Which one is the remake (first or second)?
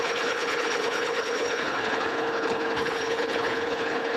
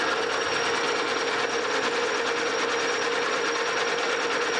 first